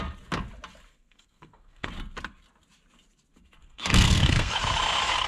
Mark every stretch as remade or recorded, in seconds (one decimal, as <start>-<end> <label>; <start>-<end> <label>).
0.0-0.9 recorded; 0.9-1.9 remade; 1.9-3.6 recorded; 3.6-4.5 remade; 4.5-5.3 recorded